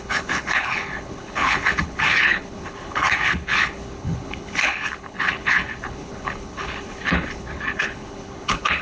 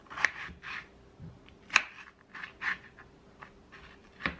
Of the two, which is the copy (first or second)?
first